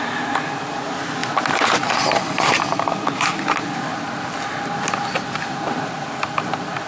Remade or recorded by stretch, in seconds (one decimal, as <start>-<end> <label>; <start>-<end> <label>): 0.0-6.9 recorded